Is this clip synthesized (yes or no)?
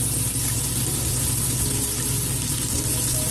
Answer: no